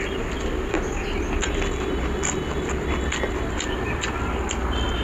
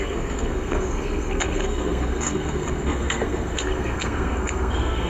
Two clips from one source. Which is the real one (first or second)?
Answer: first